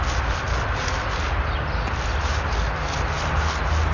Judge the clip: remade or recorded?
recorded